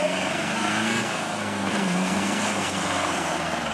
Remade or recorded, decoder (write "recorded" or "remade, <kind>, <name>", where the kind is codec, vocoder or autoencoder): remade, codec, SNAC